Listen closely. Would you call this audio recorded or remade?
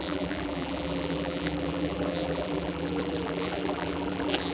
remade